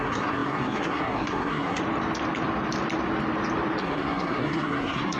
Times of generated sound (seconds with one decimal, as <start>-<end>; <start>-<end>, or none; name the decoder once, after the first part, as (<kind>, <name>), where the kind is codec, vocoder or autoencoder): 0.0-1.8 (codec, SNAC); 3.8-5.2